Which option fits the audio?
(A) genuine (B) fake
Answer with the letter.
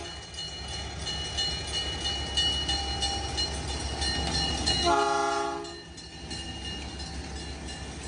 A